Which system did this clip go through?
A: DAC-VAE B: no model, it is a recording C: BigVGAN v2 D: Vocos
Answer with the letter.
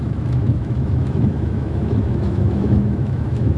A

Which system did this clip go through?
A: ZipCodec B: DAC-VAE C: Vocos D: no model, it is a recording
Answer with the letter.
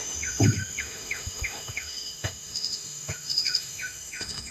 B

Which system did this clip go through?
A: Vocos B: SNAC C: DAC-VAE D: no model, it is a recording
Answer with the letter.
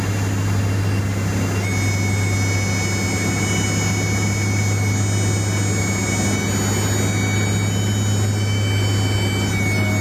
D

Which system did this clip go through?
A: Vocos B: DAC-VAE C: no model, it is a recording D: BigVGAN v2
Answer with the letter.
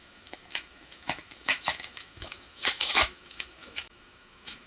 B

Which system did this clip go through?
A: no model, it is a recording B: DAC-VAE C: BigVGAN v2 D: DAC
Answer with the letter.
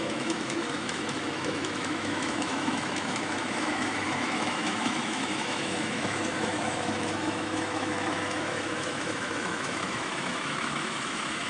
B